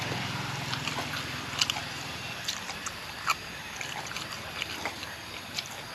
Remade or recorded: recorded